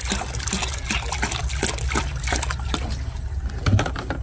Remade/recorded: recorded